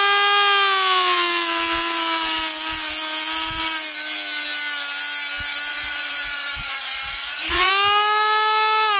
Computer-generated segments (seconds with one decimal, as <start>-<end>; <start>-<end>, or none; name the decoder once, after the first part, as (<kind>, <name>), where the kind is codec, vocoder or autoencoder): 5.7-7.7 (vocoder, Vocos)

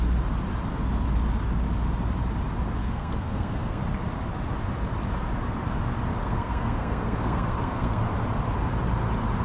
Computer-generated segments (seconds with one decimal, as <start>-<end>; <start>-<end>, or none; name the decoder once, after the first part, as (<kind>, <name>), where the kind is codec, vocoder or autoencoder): 2.8-3.8 (codec, SNAC); 6.2-8.0

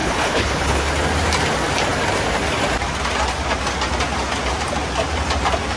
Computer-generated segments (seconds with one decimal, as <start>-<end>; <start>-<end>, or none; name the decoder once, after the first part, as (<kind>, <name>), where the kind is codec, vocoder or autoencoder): 0.0-0.9 (codec, HILCodec)

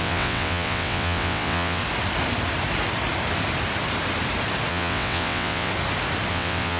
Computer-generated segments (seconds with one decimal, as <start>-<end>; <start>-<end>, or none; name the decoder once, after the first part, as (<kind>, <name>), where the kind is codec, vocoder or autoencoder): 0.0-1.8 (vocoder, WaveNeXt); 4.7-5.7; 6.3-6.8

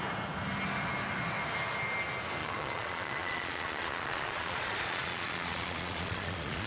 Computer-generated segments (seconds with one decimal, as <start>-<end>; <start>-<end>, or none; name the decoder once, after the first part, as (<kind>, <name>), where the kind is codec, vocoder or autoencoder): 2.4-6.7 (vocoder, Vocos)

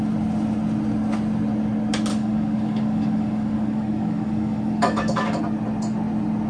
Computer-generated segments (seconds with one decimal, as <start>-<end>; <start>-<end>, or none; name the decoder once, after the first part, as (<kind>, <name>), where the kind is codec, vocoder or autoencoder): 2.1-5.4 (codec, DAC)